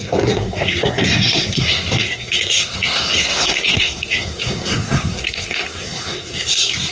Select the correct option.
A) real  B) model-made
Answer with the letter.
B